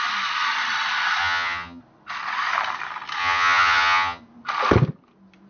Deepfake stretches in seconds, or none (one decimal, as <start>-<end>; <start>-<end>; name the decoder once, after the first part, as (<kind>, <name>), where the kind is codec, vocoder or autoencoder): 1.2-1.8 (vocoder, HiFi-GAN); 3.2-4.2